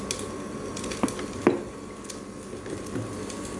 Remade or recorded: recorded